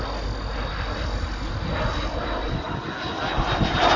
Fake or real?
real